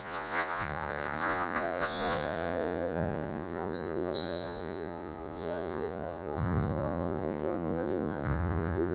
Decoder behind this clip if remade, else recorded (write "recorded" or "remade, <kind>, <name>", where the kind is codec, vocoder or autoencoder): remade, vocoder, Vocos